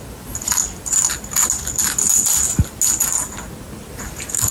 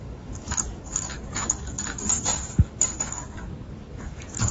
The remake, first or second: second